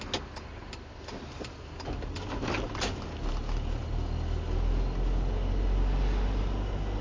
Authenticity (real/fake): real